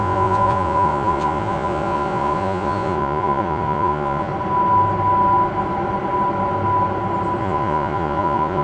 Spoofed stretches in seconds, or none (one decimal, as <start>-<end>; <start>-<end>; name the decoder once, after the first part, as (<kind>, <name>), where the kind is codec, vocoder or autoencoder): 0.0-4.3 (vocoder, Vocos); 7.4-8.6

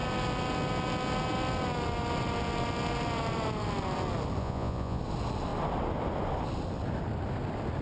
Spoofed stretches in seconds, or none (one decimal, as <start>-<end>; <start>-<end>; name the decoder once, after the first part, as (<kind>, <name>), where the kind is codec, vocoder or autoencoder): 4.4-5.0 (vocoder, Vocos)